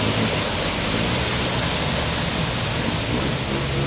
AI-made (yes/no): no